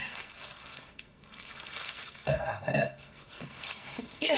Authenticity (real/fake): fake